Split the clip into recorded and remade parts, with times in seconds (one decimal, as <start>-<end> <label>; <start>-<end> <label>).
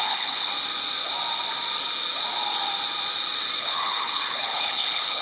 0.0-0.5 remade; 0.5-3.6 recorded; 3.6-5.2 remade